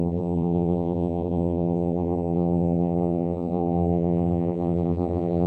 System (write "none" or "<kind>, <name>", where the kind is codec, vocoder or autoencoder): vocoder, BigVGAN v2